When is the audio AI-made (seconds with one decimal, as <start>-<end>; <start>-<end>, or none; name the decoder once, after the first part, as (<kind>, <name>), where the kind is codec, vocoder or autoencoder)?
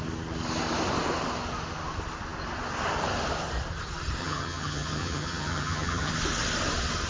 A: 4.2-6.1 (vocoder, HiFi-GAN)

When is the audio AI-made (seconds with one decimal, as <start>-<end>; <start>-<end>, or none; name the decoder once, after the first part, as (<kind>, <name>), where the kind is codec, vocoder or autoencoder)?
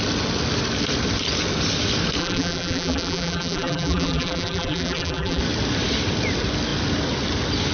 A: 2.2-5.4 (vocoder, BigVGAN v2)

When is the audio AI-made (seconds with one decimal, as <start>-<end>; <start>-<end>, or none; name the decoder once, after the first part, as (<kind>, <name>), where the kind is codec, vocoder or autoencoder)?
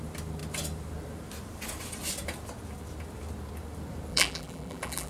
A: 4.1-5.1 (vocoder, BigVGAN v2)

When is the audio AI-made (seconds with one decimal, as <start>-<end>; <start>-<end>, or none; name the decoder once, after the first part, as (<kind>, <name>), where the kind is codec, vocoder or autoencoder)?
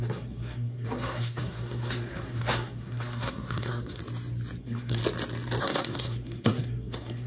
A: 0.0-4.0 (codec, SNAC); 4.6-5.0; 5.6-7.3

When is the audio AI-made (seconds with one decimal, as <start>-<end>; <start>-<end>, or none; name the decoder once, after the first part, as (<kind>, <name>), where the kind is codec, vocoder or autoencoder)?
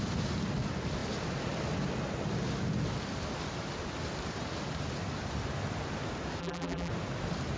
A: 6.4-6.9 (vocoder, BigVGAN v2)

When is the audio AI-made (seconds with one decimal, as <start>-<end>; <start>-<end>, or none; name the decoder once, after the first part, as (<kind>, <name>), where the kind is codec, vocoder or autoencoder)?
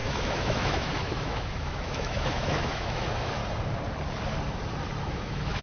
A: 0.0-3.4 (autoencoder, DAC-VAE); 5.0-5.6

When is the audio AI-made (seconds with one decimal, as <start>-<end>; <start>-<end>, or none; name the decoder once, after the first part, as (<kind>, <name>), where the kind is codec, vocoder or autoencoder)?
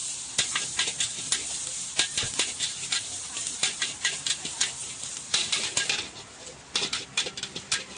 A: 1.7-4.6 (vocoder, BigVGAN v2); 5.1-8.0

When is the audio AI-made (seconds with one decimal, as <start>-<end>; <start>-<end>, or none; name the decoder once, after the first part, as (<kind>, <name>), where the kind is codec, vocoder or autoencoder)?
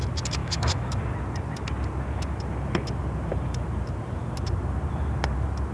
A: 0.4-1.0 (autoencoder, DAC-VAE)